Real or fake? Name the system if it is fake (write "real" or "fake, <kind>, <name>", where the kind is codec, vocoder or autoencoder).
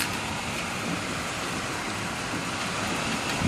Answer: real